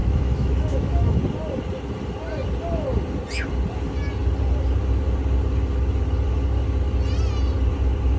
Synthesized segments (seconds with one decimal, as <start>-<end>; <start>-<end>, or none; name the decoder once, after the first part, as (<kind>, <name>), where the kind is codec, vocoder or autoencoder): 0.0-1.2 (autoencoder, DAC-VAE)